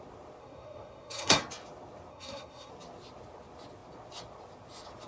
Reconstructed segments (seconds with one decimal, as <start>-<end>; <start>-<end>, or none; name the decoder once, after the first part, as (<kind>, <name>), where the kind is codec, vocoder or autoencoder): 0.4-1.4 (codec, SNAC); 2.1-2.7

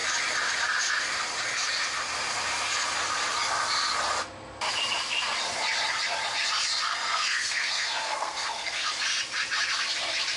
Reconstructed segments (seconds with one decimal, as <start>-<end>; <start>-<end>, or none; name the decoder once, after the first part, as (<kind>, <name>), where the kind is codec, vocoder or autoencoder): 6.9-8.9 (codec, SNAC)

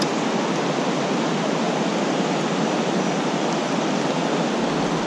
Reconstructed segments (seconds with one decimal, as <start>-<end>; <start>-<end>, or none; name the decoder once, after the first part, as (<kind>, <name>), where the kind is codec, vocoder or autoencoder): none